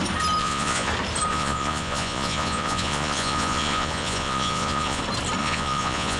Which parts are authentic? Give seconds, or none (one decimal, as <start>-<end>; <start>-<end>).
0.0-0.4; 0.9-1.3; 5.0-5.4